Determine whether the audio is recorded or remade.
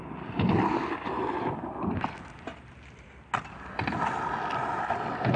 recorded